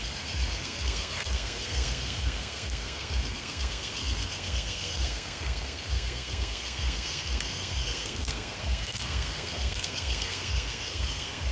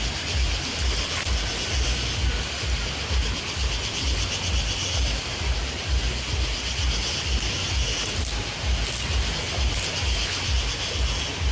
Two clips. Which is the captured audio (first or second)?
second